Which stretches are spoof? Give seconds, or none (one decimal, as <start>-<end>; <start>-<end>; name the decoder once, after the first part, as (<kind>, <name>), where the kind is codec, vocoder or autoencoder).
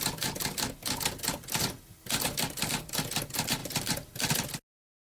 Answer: 3.6-4.3 (vocoder, BigVGAN v2)